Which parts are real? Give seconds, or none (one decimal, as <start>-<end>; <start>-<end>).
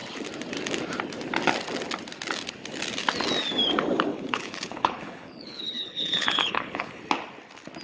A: 0.0-4.1; 7.0-7.8